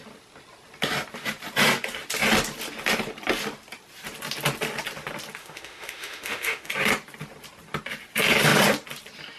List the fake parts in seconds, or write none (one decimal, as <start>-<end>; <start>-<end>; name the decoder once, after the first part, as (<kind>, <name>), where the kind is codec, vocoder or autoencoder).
5.4-6.7 (autoencoder, DAC-VAE)